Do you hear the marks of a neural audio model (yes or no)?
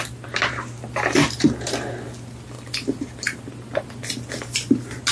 no